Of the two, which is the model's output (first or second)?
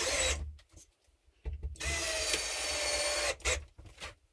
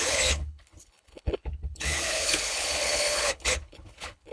second